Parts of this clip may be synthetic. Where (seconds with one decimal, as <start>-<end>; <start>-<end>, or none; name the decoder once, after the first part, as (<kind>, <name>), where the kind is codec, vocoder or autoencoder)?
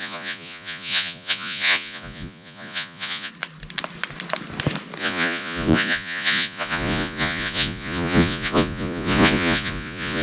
0.0-3.3 (vocoder, Vocos); 5.0-10.2